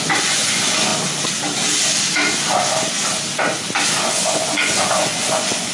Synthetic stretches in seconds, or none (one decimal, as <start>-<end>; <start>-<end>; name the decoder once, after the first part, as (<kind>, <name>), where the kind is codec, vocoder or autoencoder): 0.0-0.9 (vocoder, Vocos); 4.1-5.7